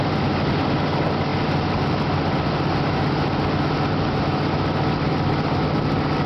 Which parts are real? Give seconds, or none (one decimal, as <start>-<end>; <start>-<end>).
0.0-6.3